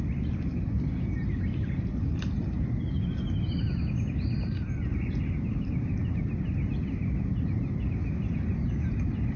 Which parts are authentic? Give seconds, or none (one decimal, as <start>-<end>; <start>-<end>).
1.2-4.8; 7.0-8.2